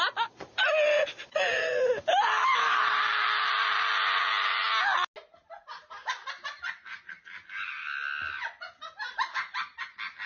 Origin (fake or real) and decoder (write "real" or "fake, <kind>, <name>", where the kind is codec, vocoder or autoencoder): real